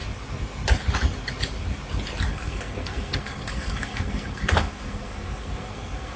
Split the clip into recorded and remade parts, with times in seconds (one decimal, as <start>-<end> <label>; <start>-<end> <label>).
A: 0.0-2.3 recorded; 2.3-6.2 remade